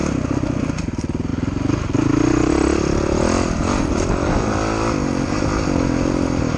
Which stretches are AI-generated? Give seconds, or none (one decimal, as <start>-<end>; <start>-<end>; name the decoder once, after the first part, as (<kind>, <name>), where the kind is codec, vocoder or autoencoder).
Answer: none